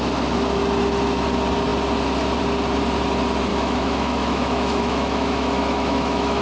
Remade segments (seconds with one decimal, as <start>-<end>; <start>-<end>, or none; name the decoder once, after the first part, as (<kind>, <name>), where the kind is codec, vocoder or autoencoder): 3.5-6.4 (autoencoder, DAC-VAE)